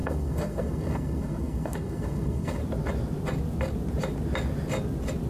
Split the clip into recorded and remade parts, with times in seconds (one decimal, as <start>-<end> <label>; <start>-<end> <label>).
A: 0.0-2.6 remade; 2.6-5.3 recorded

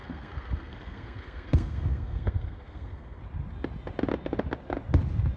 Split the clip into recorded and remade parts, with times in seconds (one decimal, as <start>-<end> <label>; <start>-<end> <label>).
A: 0.0-3.2 remade; 3.2-5.4 recorded

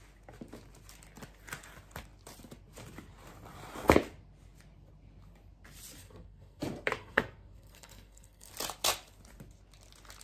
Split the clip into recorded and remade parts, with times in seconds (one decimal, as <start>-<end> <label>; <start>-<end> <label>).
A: 0.0-6.0 recorded; 6.0-6.6 remade; 6.6-7.0 recorded; 7.0-8.5 remade; 8.5-10.2 recorded

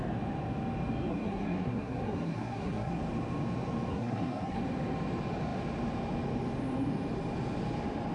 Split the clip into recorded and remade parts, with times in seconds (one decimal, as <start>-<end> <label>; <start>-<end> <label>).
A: 0.0-1.1 recorded; 1.1-3.0 remade; 3.0-3.9 recorded; 3.9-4.6 remade; 4.6-8.1 recorded